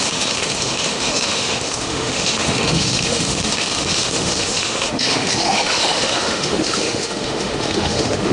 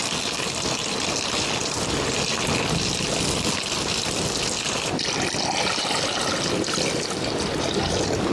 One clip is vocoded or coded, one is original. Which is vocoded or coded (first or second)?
first